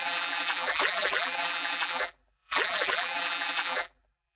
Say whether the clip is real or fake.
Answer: fake